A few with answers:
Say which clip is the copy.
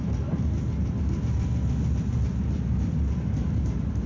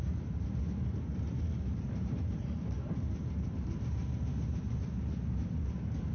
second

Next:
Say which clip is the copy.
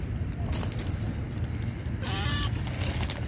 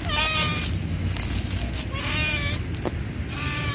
first